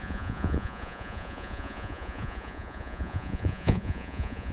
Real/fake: fake